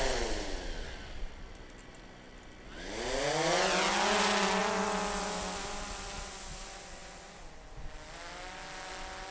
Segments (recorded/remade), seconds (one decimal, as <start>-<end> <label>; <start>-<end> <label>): 0.0-9.3 recorded